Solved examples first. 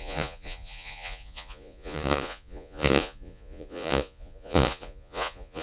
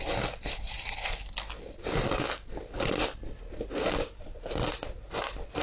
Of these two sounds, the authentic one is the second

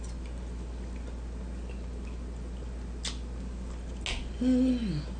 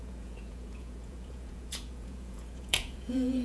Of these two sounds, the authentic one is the first